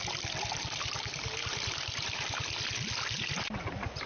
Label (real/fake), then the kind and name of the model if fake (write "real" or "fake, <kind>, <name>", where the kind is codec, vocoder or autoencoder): real